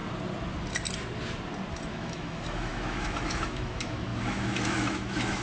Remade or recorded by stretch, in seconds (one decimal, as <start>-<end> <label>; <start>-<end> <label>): 0.0-1.9 recorded; 1.9-5.4 remade